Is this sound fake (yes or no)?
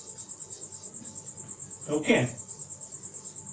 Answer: no